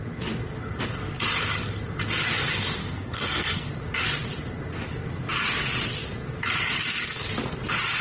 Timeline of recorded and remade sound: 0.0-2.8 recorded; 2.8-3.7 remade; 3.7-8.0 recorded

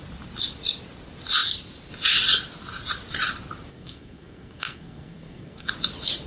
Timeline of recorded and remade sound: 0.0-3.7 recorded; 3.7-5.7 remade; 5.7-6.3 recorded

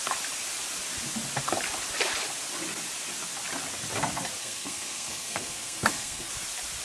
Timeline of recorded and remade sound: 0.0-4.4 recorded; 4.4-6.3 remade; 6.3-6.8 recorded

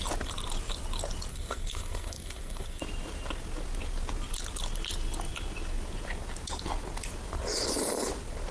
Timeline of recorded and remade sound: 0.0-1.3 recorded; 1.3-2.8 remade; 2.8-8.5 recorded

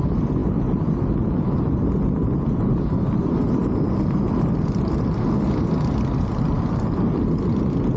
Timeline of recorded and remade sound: 0.0-8.0 recorded

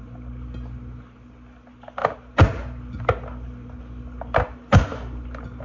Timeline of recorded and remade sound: 0.0-5.6 recorded